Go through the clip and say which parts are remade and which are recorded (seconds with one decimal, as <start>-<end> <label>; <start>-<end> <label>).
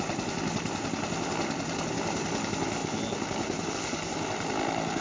0.0-5.0 recorded